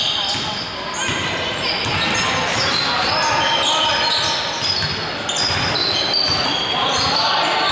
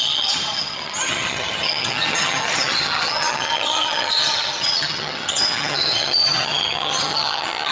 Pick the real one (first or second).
first